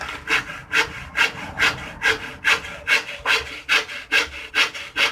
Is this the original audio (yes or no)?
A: yes